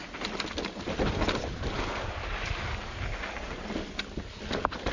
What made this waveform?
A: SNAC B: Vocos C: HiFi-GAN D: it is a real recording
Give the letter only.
D